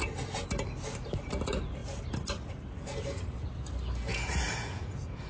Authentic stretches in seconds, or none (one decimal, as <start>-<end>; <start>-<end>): 0.0-4.1